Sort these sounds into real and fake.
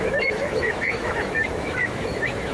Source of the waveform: fake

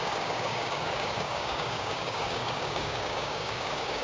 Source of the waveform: fake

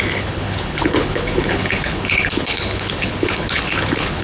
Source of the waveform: fake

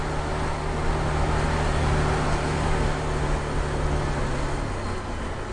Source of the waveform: real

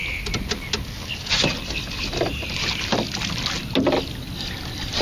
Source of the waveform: real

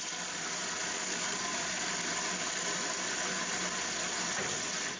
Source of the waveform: real